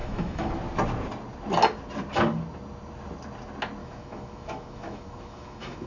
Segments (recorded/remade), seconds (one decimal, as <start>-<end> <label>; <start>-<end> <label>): 0.0-0.5 remade; 0.5-3.8 recorded; 3.8-5.9 remade